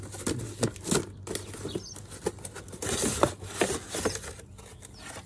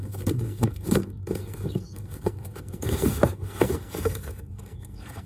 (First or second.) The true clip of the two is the first